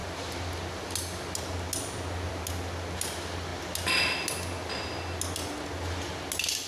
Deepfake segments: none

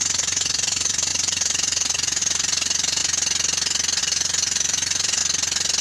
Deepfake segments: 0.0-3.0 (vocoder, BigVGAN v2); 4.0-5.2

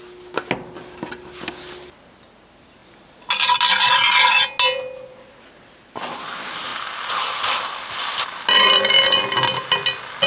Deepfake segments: none